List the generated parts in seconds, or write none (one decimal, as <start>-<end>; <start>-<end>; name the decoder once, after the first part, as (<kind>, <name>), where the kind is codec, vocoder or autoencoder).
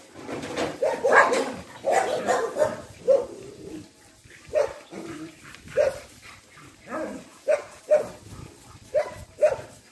7.3-7.8 (vocoder, Vocos)